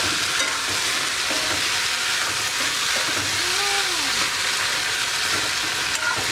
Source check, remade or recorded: recorded